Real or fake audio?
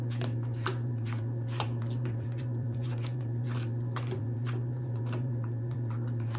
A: fake